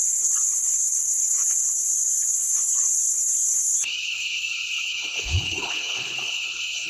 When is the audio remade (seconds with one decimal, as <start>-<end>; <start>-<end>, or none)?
0.0-6.9